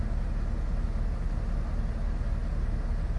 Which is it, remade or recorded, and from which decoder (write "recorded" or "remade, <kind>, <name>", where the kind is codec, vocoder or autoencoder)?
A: recorded